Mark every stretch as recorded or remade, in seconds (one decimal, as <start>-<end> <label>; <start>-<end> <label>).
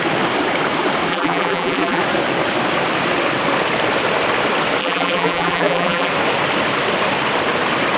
0.0-1.1 recorded; 1.1-2.0 remade; 2.0-4.8 recorded; 4.8-6.1 remade; 6.1-8.0 recorded